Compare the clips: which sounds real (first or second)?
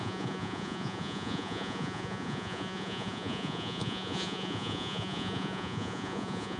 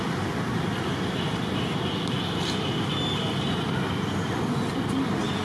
second